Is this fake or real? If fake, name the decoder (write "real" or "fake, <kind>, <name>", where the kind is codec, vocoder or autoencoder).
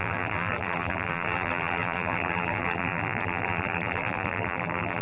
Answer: fake, vocoder, BigVGAN v2